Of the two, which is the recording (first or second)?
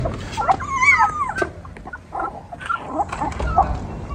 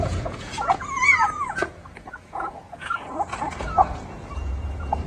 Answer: first